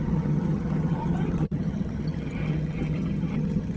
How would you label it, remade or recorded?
remade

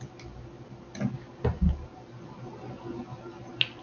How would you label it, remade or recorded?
recorded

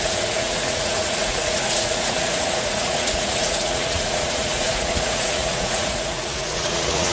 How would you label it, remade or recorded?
remade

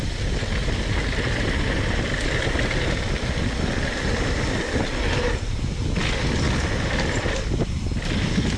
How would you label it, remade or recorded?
recorded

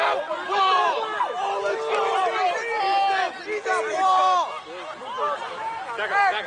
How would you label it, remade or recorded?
recorded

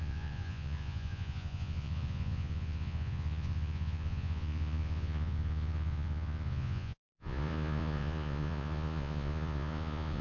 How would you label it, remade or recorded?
remade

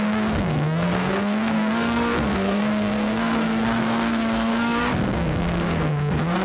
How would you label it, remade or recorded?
remade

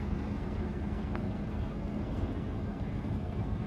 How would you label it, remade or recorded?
remade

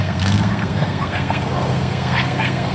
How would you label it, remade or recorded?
remade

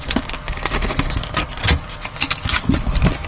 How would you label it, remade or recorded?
recorded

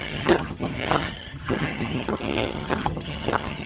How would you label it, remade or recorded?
remade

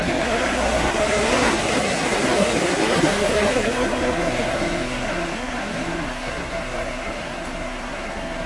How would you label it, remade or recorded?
remade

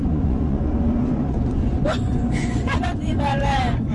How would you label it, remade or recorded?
remade